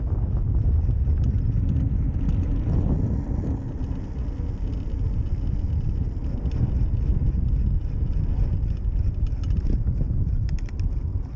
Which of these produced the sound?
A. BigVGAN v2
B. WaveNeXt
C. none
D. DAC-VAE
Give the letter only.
C